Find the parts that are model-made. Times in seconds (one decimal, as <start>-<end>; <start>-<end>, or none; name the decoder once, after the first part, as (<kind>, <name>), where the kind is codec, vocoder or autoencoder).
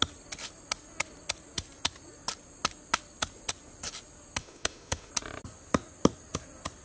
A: 4.4-5.1 (autoencoder, DAC-VAE)